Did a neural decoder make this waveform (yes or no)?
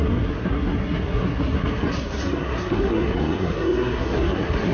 yes